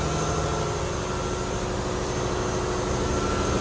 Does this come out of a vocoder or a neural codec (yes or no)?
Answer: no